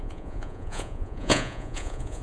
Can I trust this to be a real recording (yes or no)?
no